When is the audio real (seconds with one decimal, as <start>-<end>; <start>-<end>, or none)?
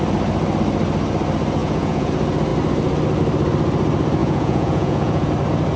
0.0-1.6; 2.1-4.2; 5.3-5.8